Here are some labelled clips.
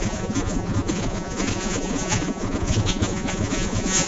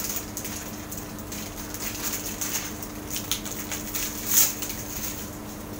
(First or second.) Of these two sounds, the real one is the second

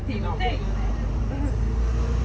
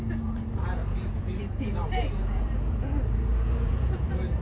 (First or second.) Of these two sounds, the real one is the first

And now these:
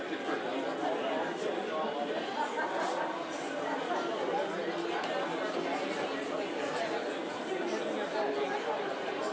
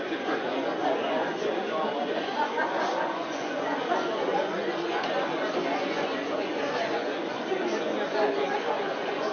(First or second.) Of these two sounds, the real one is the first